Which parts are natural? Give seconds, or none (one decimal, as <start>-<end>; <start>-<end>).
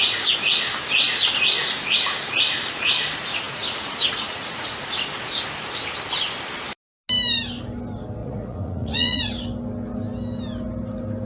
0.0-3.5; 4.9-8.2; 9.2-11.3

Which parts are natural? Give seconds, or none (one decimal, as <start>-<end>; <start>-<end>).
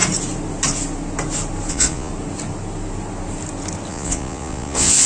0.0-1.7; 2.1-3.9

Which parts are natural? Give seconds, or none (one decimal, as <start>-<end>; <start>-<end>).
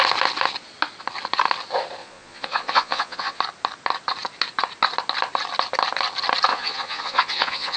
0.0-2.0; 3.4-6.5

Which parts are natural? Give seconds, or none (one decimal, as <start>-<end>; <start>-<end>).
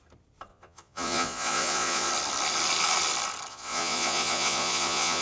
0.0-0.5; 2.1-3.5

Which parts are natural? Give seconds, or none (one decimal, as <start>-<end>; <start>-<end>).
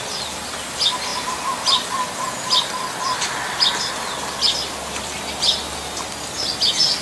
0.0-7.0